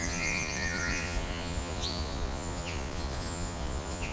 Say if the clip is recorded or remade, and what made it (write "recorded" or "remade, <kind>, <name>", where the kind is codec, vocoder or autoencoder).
remade, vocoder, Vocos